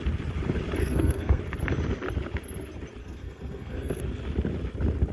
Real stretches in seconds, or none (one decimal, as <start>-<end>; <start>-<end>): 0.0-0.8; 1.4-3.0; 4.0-5.1